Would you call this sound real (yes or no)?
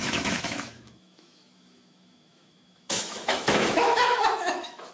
no